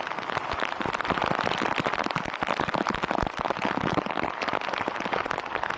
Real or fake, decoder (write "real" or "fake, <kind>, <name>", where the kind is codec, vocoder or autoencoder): real